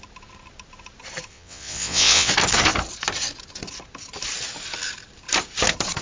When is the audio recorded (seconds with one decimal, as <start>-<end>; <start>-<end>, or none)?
0.0-1.3; 2.3-6.0